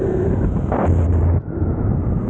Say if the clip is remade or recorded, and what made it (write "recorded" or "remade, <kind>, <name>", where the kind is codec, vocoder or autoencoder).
recorded